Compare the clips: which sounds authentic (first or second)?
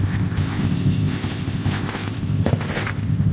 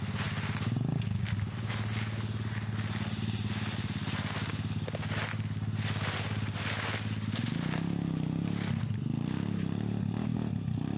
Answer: second